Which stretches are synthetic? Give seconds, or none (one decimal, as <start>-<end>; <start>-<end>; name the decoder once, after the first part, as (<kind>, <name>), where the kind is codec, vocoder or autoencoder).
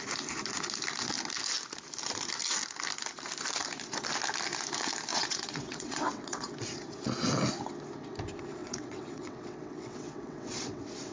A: 5.1-6.5 (vocoder, WaveNeXt); 8.6-11.1